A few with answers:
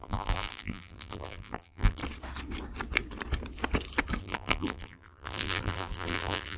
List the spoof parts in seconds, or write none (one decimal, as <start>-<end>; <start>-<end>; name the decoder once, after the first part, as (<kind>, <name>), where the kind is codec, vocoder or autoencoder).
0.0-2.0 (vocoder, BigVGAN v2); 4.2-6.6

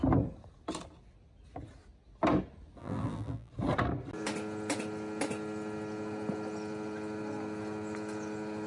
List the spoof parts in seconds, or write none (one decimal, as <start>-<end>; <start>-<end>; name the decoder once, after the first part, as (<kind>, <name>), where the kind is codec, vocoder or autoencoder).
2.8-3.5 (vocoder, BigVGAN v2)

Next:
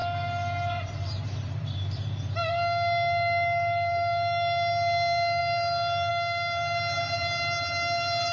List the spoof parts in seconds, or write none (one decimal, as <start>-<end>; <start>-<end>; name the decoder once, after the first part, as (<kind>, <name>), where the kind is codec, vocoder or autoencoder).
0.9-8.3 (vocoder, BigVGAN v2)

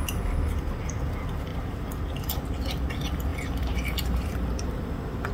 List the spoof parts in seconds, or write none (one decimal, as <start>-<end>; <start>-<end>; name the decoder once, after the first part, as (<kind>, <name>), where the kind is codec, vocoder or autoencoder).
1.5-2.0 (vocoder, BigVGAN v2); 3.3-5.3

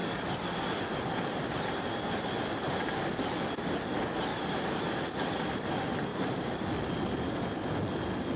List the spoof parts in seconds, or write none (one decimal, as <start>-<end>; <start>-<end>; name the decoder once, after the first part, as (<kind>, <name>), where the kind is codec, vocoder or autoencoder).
4.3-4.9 (vocoder, BigVGAN v2); 6.1-6.6

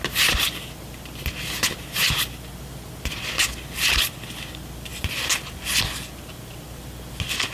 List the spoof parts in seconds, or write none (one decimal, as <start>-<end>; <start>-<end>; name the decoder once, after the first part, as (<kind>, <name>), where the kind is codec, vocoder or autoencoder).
none

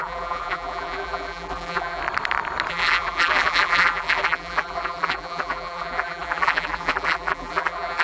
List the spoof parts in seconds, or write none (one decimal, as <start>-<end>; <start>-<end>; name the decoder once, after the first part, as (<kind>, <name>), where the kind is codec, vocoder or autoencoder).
0.0-2.0 (vocoder, BigVGAN v2); 2.7-8.0